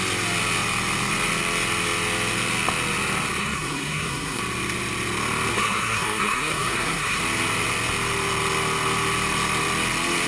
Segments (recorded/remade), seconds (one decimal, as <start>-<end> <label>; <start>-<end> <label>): 0.0-3.4 recorded; 3.4-4.4 remade; 4.4-5.5 recorded; 5.5-7.2 remade; 7.2-10.3 recorded